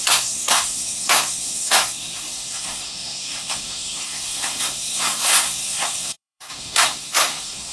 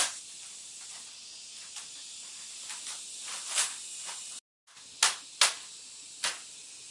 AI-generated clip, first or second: first